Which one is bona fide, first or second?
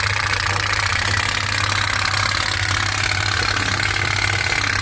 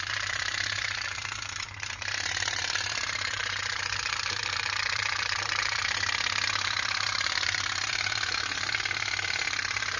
first